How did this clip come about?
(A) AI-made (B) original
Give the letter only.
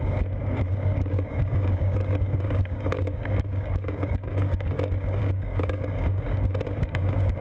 A